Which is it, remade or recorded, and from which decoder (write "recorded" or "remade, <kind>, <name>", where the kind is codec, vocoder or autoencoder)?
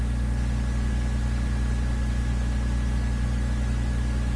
recorded